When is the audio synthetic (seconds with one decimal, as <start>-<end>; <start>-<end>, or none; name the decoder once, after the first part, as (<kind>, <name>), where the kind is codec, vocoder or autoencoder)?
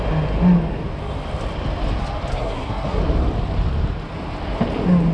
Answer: 2.3-3.0 (codec, SNAC)